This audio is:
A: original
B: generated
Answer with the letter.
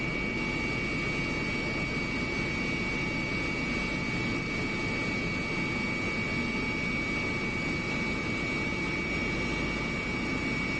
A